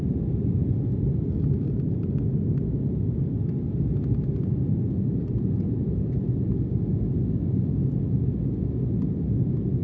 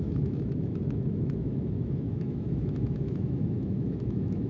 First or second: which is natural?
first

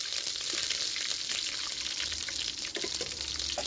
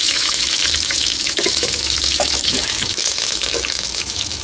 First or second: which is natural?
first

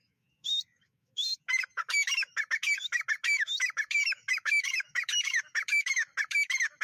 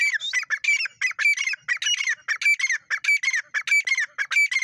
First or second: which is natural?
second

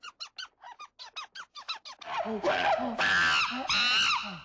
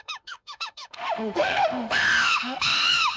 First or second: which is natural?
first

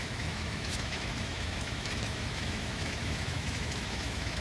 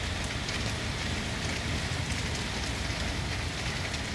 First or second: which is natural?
second